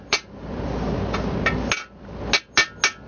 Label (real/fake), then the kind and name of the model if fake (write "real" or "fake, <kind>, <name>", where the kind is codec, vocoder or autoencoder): real